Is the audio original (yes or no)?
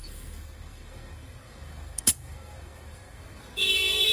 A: no